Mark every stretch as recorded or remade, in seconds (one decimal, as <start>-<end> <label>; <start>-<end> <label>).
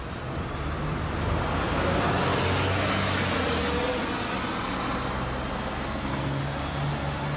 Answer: 0.0-5.5 recorded; 5.5-6.4 remade; 6.4-7.4 recorded